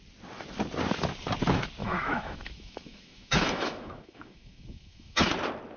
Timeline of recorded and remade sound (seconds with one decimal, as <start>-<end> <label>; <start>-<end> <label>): 0.0-1.8 recorded; 1.8-5.3 remade; 5.3-5.8 recorded